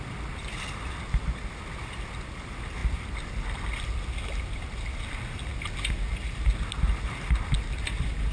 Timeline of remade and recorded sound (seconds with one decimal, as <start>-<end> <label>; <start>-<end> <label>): 0.0-8.3 recorded